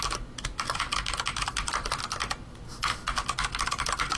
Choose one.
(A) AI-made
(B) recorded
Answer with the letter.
B